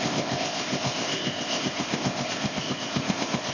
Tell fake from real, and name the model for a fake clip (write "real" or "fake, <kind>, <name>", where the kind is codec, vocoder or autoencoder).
fake, codec, ZipCodec